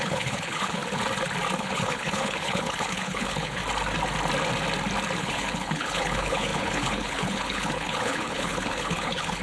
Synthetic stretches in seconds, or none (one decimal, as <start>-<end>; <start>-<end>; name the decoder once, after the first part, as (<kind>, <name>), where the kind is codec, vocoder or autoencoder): 0.0-0.8 (codec, HILCodec); 1.6-3.6; 5.2-9.4